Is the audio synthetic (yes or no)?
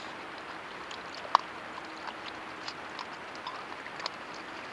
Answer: no